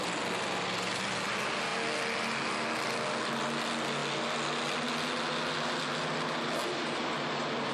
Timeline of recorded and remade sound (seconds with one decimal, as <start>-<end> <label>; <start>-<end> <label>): 0.0-7.7 recorded